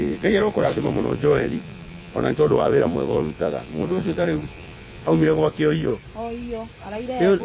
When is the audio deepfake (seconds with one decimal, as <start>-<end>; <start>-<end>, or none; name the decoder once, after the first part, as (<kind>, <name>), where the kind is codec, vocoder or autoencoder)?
0.0-5.9 (vocoder, Vocos)